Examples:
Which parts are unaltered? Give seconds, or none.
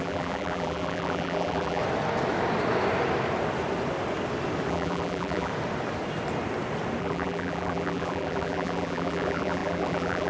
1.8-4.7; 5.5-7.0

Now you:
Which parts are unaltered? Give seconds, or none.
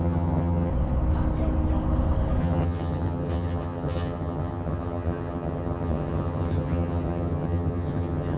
0.7-2.4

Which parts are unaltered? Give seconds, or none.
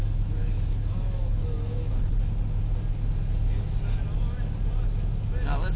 0.0-0.4; 1.9-5.8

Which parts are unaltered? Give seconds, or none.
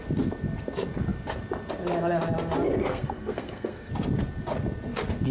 0.0-2.8; 3.9-5.3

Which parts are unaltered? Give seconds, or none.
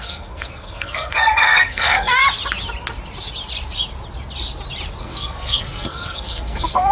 2.2-5.0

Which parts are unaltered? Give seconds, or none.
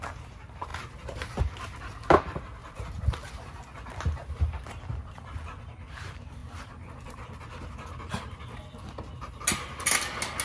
0.0-2.6; 3.3-6.4; 7.2-10.4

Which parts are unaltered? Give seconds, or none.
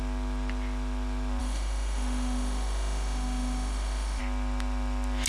0.0-1.4; 4.2-5.3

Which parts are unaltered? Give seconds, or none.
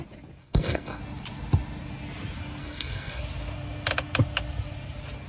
0.0-0.4; 1.0-2.6; 3.2-5.3